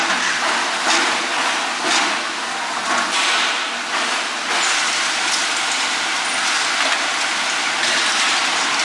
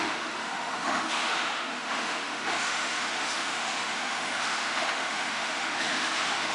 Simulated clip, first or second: second